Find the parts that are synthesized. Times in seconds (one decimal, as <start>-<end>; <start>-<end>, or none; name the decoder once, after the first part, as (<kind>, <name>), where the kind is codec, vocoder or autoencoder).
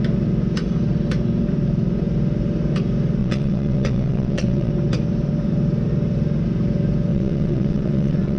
3.2-4.7 (vocoder, WaveNeXt); 7.1-8.4